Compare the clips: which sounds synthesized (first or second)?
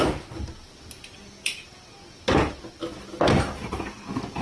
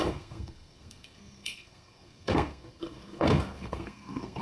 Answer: second